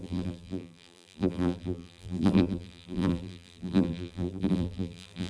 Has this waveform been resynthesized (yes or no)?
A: yes